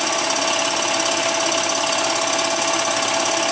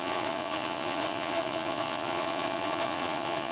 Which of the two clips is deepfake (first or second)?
second